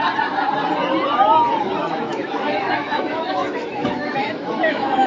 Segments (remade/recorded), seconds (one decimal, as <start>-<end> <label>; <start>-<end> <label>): 0.0-1.8 recorded; 1.8-5.1 remade